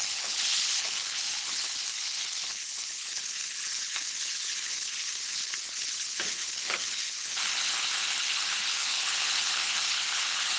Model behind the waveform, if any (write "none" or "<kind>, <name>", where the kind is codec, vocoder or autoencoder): codec, HILCodec